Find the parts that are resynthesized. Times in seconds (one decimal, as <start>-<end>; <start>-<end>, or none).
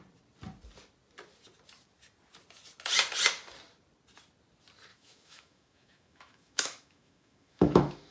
4.9-8.1